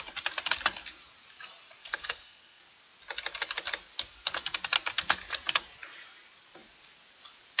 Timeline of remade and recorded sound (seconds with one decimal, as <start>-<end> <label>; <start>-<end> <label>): 0.0-1.8 recorded; 1.8-2.6 remade; 2.6-7.6 recorded